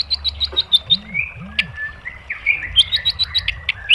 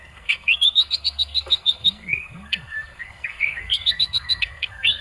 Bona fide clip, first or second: first